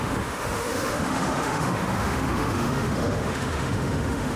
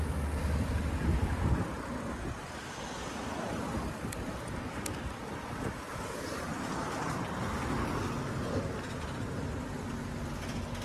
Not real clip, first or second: first